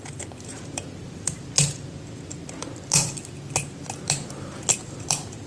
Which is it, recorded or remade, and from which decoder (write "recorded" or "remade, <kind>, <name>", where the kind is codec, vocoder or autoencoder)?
recorded